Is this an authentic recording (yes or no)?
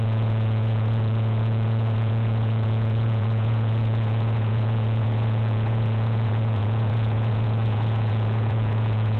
no